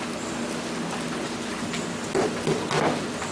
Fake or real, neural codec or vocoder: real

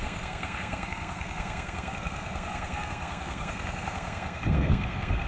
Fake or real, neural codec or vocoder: fake, codec, SNAC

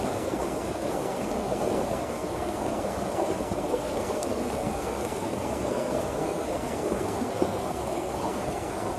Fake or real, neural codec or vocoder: fake, codec, SNAC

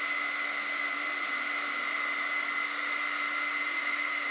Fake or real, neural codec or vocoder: real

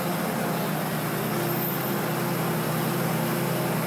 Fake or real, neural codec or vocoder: real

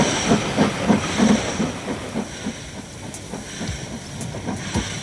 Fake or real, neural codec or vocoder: real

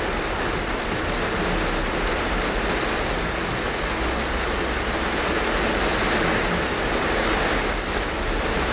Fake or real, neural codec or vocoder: real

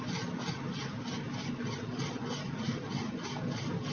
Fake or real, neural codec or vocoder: real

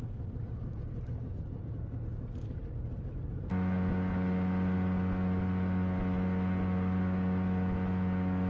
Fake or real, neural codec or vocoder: real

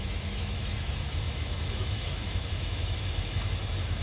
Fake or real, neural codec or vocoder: fake, autoencoder, DAC-VAE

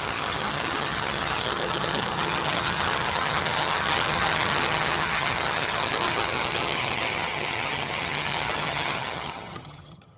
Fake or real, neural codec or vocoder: fake, vocoder, HiFi-GAN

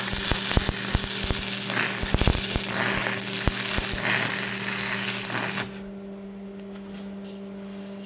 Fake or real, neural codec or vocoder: real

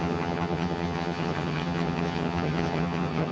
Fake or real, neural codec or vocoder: fake, vocoder, HiFi-GAN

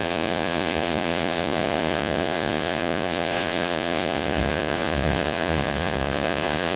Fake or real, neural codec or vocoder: fake, vocoder, Vocos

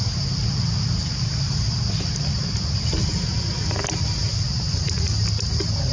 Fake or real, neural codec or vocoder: real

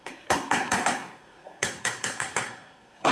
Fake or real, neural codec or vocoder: fake, codec, SNAC